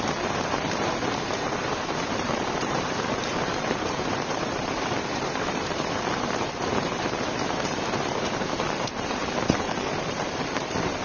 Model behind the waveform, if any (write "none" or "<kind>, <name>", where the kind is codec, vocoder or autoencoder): vocoder, BigVGAN v2